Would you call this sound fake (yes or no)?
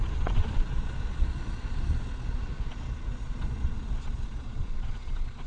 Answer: yes